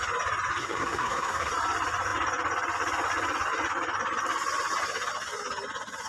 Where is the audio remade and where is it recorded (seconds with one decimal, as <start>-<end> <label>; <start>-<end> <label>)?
0.0-0.6 recorded; 0.6-1.5 remade; 1.5-6.1 recorded